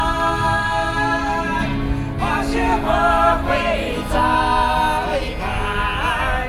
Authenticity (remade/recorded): recorded